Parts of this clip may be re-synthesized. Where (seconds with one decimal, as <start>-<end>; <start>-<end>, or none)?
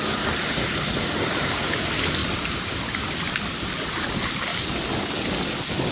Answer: none